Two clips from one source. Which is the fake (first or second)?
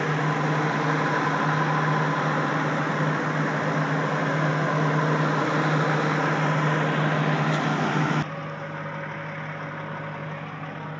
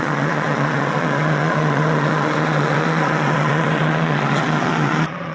second